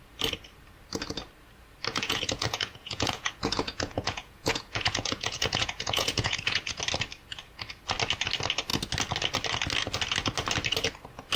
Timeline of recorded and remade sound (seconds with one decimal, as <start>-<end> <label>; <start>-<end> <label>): 0.0-1.9 recorded; 1.9-6.8 remade; 6.8-11.4 recorded